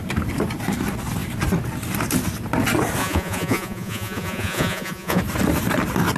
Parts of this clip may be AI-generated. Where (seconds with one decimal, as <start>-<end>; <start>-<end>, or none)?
3.0-5.2